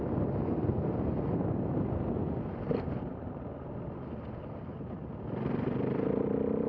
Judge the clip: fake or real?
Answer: real